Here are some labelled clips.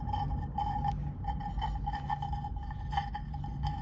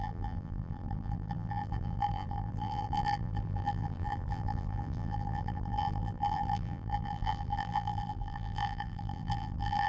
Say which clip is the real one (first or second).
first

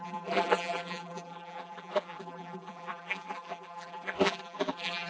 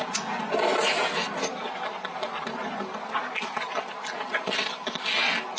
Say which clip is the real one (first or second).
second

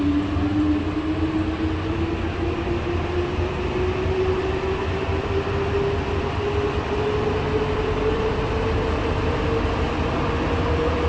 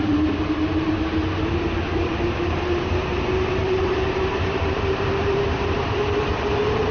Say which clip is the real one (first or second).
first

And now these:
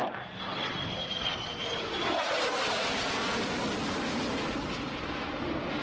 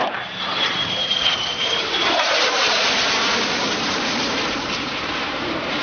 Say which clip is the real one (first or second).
first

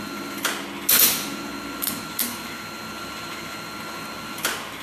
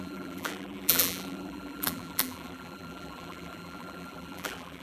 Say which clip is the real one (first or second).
first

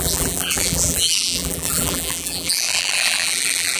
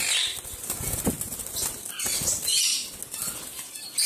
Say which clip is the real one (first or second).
second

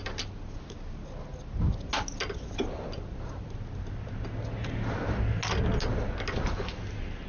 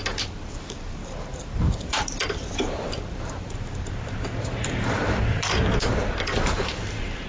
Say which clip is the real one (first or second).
first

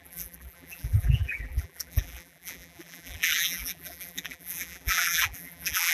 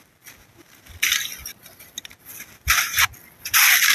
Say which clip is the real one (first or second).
second